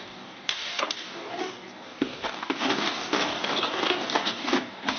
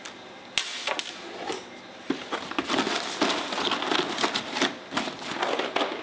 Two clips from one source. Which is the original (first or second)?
second